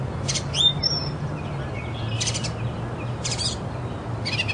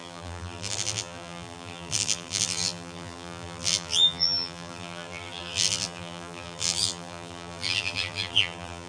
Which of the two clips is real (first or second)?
first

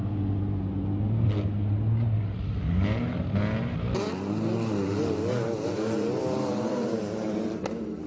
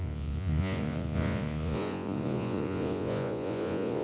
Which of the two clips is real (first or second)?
first